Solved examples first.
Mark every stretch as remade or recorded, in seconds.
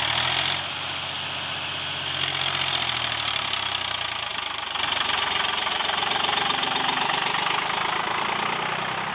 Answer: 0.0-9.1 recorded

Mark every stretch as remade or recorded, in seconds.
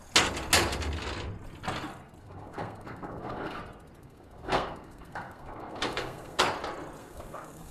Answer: 0.0-2.2 recorded; 2.2-3.6 remade; 3.6-4.0 recorded; 4.0-6.4 remade; 6.4-7.0 recorded; 7.0-7.7 remade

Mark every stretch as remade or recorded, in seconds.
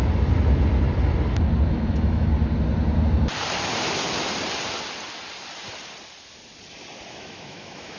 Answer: 0.0-1.7 recorded; 1.7-2.3 remade; 2.3-7.1 recorded; 7.1-8.0 remade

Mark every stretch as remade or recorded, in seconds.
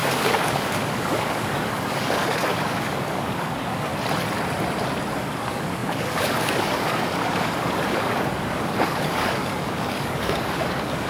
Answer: 0.0-3.9 remade; 3.9-5.1 recorded; 5.1-11.1 remade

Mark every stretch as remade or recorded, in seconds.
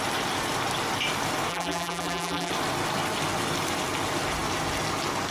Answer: 0.0-1.5 recorded; 1.5-2.5 remade; 2.5-5.3 recorded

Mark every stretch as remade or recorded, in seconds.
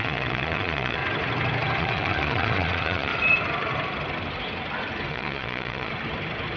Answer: 0.0-1.0 remade; 1.0-1.8 recorded; 1.8-3.1 remade; 3.1-5.1 recorded; 5.1-5.9 remade; 5.9-6.6 recorded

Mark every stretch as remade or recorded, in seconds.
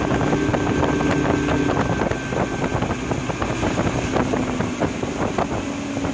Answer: 0.0-6.1 recorded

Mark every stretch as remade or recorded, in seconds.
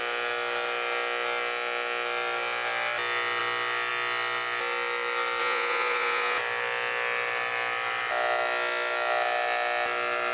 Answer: 0.0-5.4 recorded; 5.4-6.4 remade; 6.4-10.3 recorded